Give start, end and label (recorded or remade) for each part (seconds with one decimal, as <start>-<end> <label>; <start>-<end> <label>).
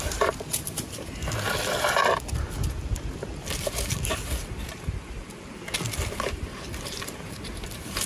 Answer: 0.0-1.2 remade; 1.2-6.1 recorded; 6.1-8.1 remade